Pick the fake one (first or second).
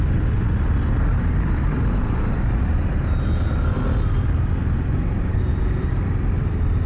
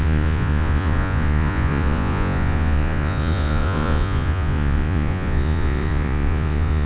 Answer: second